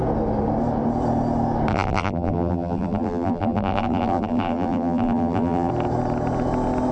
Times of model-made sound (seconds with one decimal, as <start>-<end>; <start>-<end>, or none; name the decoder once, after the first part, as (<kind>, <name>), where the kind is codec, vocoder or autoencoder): 1.7-5.7 (vocoder, BigVGAN v2)